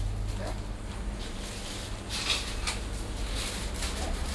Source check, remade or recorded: recorded